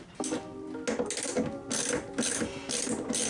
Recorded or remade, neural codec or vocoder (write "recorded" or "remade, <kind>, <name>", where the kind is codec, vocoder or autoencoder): recorded